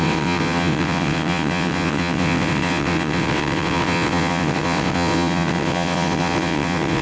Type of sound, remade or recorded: remade